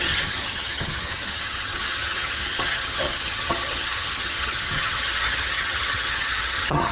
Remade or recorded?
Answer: remade